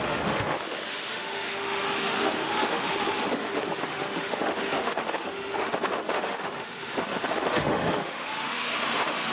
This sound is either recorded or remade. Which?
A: remade